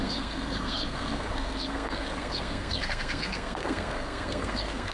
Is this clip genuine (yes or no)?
no